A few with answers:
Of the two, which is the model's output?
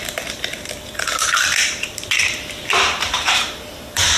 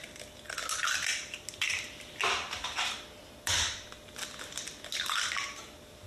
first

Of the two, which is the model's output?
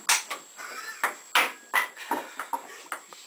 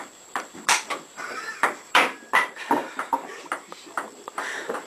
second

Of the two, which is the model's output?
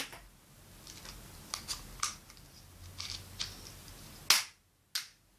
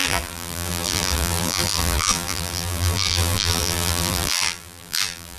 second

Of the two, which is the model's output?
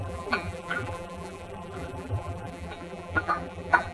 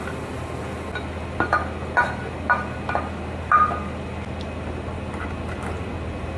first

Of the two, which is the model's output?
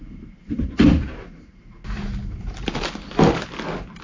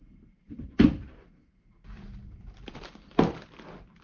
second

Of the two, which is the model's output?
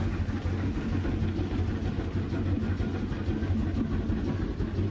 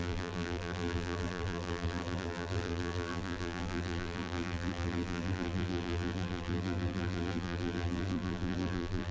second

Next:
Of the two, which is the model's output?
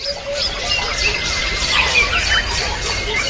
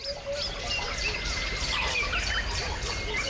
first